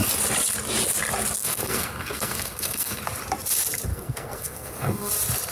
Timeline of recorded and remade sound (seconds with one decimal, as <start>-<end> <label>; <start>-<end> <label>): 0.0-1.4 recorded; 1.4-3.0 remade; 3.0-3.9 recorded; 3.9-5.1 remade; 5.1-5.5 recorded